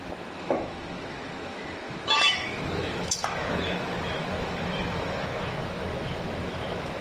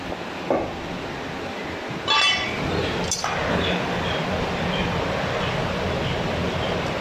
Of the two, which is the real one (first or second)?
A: second